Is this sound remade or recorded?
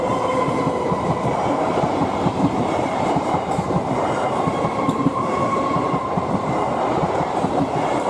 remade